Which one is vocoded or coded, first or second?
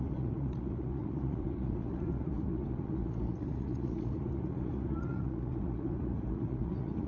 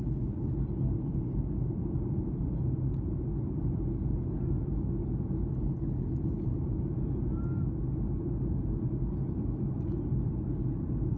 first